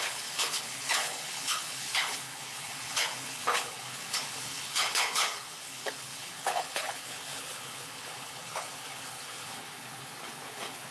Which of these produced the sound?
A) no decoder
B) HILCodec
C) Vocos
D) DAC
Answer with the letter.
B